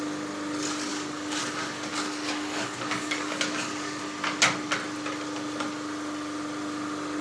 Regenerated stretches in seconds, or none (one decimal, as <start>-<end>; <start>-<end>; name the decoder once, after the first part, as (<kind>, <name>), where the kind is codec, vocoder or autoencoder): 0.9-1.4 (codec, DAC); 1.9-4.0